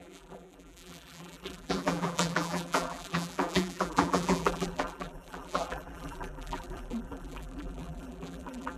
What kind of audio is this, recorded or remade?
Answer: remade